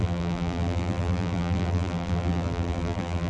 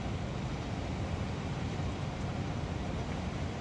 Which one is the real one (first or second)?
second